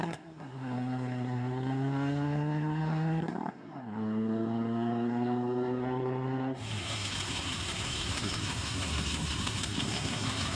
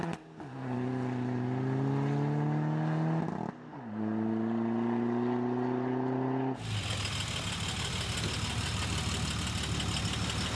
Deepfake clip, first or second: first